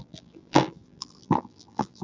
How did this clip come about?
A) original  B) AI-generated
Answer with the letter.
B